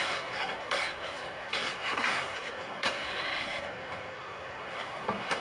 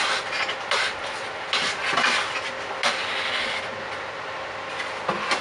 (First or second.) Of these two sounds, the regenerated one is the first